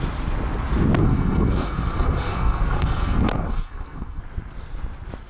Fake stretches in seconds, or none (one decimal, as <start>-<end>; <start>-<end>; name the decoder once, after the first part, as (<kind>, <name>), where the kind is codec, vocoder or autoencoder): 1.0-4.2 (codec, SNAC)